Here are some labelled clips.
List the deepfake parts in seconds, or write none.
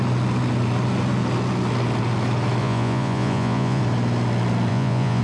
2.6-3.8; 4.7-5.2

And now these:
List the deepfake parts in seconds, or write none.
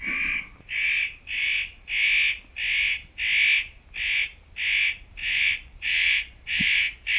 5.2-6.8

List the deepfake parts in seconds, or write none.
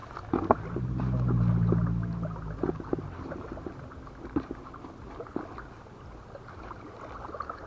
none